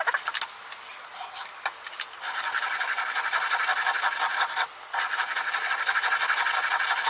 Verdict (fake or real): real